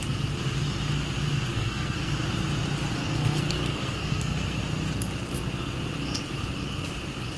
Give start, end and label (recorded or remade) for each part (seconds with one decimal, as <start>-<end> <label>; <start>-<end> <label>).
0.0-1.5 recorded; 1.5-2.1 remade; 2.1-3.0 recorded; 3.0-4.6 remade; 4.6-7.4 recorded